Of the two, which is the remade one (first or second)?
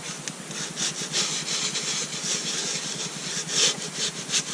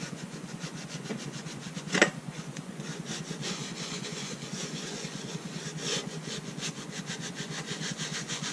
second